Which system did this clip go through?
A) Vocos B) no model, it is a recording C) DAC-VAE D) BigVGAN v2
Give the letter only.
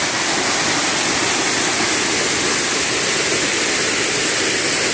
D